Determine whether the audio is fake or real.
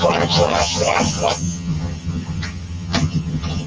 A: fake